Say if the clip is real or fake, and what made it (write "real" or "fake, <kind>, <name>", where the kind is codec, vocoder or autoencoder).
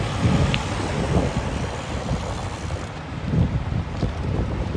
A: real